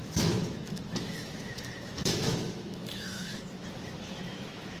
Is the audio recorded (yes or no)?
no